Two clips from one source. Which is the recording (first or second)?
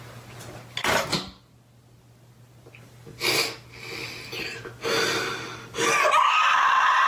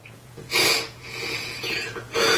first